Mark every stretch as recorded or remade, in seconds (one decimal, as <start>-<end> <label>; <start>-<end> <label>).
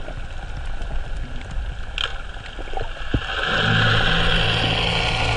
0.0-5.4 recorded